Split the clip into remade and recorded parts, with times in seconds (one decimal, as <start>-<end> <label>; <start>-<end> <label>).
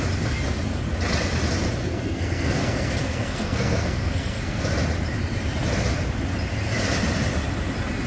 0.0-1.8 recorded; 1.8-4.6 remade; 4.6-8.1 recorded